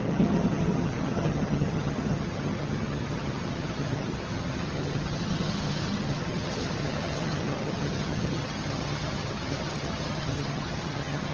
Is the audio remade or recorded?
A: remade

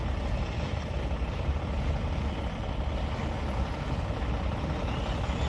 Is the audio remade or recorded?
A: recorded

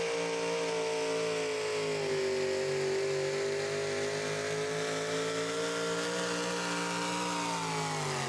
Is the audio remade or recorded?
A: recorded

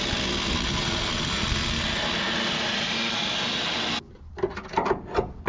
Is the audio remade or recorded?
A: recorded